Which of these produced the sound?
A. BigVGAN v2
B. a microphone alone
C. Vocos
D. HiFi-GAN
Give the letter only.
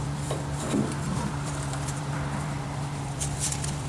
A